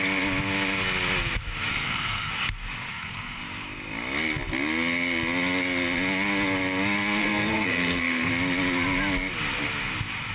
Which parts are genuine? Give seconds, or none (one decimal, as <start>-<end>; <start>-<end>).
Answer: 0.0-1.7; 2.3-2.9; 3.4-7.2; 8.3-10.3